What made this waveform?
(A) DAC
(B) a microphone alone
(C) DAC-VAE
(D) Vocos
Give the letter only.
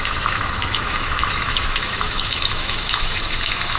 C